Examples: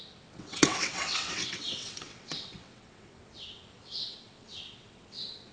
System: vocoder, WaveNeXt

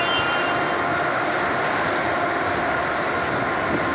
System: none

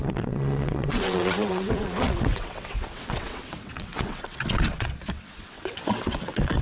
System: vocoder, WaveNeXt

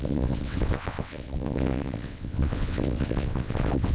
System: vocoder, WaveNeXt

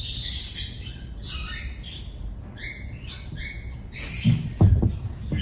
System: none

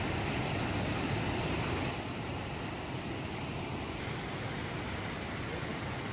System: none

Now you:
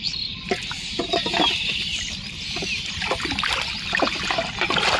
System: none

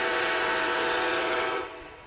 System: vocoder, WaveNeXt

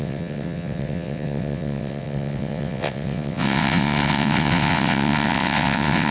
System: vocoder, WaveNeXt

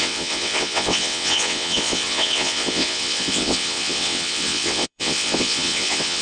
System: vocoder, WaveNeXt